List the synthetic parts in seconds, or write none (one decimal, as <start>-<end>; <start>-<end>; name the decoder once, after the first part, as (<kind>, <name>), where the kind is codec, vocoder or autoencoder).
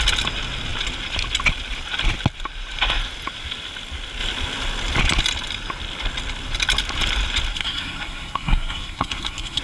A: 7.5-9.6 (codec, SNAC)